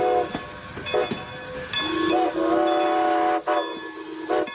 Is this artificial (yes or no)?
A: no